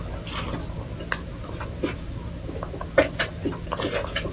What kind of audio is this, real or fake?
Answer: real